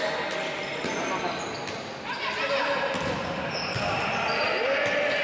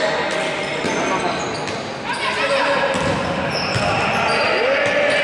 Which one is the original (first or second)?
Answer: second